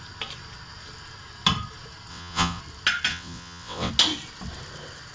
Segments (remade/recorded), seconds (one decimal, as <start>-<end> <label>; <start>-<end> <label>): 0.0-2.1 recorded; 2.1-2.6 remade; 2.6-3.1 recorded; 3.1-3.9 remade; 3.9-5.1 recorded